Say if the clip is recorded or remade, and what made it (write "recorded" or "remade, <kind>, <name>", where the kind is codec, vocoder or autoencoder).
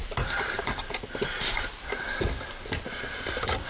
recorded